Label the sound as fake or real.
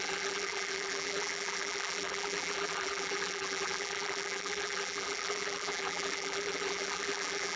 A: fake